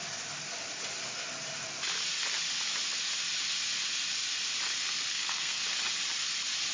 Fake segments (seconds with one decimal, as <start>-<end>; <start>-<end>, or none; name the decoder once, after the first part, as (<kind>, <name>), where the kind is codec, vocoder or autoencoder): 5.1-5.6 (codec, SNAC)

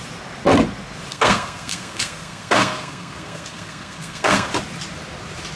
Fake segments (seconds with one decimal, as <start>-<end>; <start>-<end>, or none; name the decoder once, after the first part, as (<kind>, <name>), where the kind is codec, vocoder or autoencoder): 1.1-4.5 (codec, SNAC)

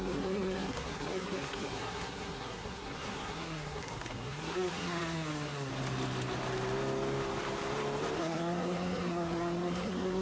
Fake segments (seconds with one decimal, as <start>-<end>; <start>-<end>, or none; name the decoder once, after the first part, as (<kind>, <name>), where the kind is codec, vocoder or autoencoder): 0.0-5.7 (codec, SNAC); 8.2-10.2

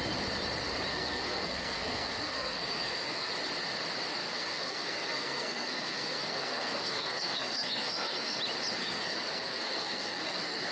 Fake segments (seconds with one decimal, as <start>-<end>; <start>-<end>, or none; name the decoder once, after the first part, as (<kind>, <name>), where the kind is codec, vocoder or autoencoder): 0.9-3.3 (codec, SNAC); 4.2-8.4; 8.8-10.7